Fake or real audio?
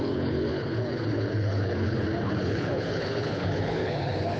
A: fake